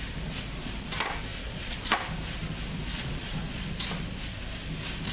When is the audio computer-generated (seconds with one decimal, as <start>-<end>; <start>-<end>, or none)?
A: 1.3-2.0; 2.9-3.7